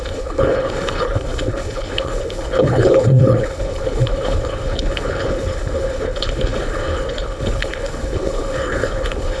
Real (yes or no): no